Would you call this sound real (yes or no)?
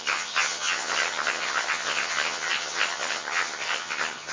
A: no